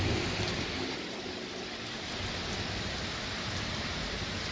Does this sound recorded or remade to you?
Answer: recorded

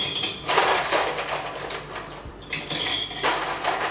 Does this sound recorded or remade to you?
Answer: recorded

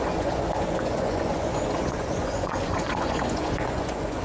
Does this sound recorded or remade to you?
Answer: remade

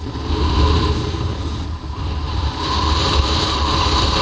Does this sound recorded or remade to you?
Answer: remade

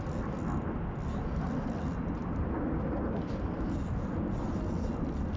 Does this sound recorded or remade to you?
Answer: recorded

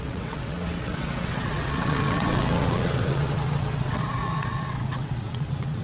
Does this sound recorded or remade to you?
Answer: remade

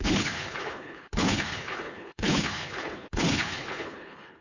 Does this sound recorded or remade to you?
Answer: remade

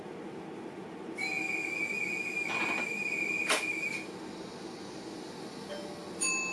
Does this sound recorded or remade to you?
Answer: recorded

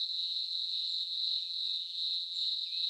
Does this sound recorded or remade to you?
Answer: remade